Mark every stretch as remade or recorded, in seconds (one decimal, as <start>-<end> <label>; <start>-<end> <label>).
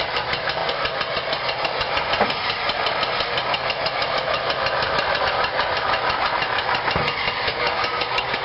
0.0-7.5 recorded; 7.5-8.4 remade